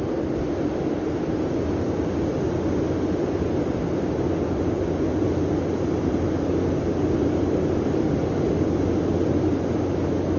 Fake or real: real